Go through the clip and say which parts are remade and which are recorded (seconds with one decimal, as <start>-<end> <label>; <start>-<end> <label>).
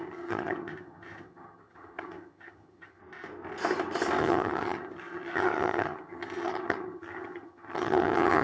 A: 0.0-3.0 remade; 3.0-4.2 recorded; 4.2-8.4 remade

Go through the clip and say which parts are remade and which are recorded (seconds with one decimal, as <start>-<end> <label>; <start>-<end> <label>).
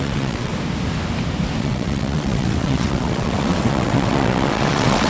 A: 0.0-0.5 remade; 0.5-1.6 recorded; 1.6-5.1 remade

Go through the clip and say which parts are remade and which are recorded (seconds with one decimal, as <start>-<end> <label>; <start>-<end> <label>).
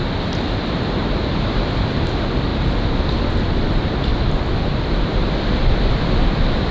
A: 0.0-6.7 recorded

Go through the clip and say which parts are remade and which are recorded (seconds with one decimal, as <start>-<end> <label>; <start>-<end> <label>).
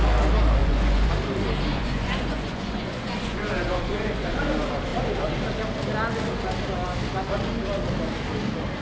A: 0.0-0.6 recorded; 0.6-1.1 remade; 1.1-1.7 recorded; 1.7-4.4 remade; 4.4-8.8 recorded